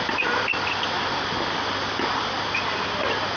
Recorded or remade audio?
recorded